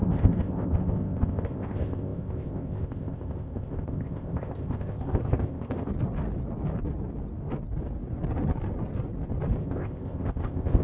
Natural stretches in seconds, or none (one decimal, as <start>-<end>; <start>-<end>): 5.9-9.6